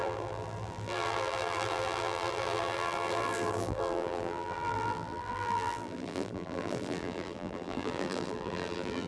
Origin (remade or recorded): remade